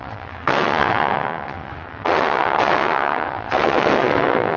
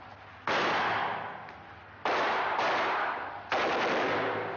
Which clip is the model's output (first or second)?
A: first